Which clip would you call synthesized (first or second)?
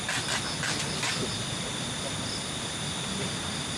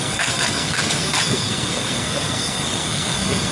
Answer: second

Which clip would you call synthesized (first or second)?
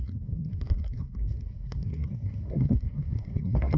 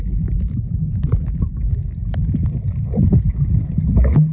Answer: first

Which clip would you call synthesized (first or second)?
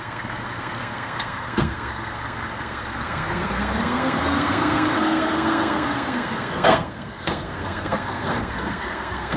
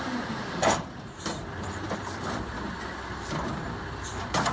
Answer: first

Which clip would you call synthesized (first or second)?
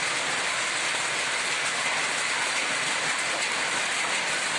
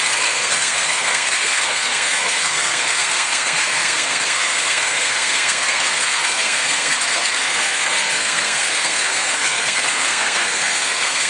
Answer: second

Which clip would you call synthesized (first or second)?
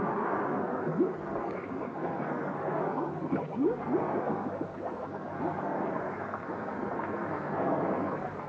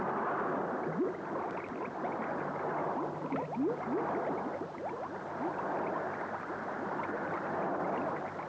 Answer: first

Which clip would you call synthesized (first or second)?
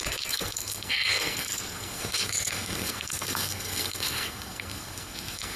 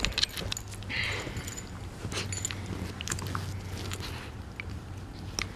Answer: first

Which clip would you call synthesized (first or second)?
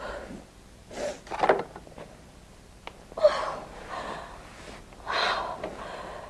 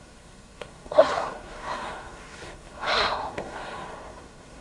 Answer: second